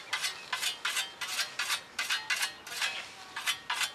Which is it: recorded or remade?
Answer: recorded